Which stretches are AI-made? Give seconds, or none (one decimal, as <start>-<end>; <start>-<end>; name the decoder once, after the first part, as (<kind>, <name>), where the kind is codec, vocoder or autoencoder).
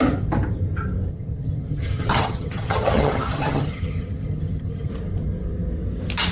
1.1-4.9 (vocoder, HiFi-GAN)